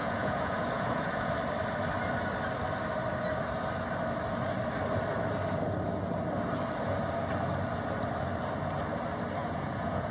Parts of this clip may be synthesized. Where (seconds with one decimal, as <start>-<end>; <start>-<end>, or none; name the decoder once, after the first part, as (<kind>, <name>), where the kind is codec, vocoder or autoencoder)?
0.0-1.3 (vocoder, Vocos); 9.4-10.1